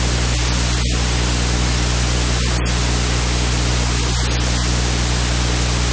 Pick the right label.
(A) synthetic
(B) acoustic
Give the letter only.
B